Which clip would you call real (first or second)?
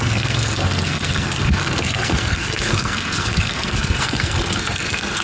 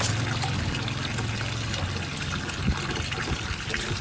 second